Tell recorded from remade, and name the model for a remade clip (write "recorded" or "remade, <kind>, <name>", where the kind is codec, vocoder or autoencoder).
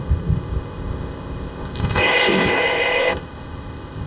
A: remade, codec, ZipCodec